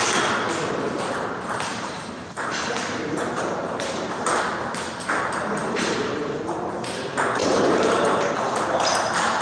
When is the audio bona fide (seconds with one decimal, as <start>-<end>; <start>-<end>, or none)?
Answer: 0.0-1.7; 4.2-5.6; 6.4-7.4; 8.3-9.4